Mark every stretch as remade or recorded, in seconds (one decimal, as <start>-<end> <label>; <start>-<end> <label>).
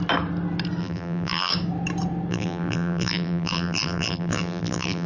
0.0-0.8 recorded; 0.8-1.5 remade; 1.5-2.3 recorded; 2.3-5.1 remade